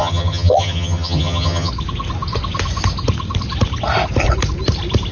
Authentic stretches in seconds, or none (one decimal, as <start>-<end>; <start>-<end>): 1.7-5.1